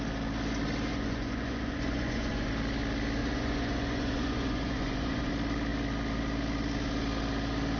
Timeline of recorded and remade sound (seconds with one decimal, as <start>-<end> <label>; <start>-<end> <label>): 0.0-0.9 recorded; 0.9-2.5 remade; 2.5-3.2 recorded; 3.2-5.3 remade; 5.3-7.8 recorded